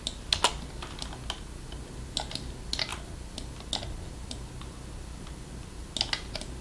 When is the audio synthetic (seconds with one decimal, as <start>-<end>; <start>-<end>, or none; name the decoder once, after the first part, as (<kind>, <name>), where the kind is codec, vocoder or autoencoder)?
none